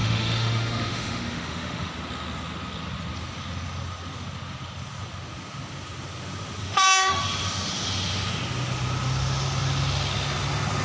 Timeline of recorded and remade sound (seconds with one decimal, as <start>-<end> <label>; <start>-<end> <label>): 0.0-1.9 remade; 1.9-6.6 recorded; 6.6-7.2 remade; 7.2-10.8 recorded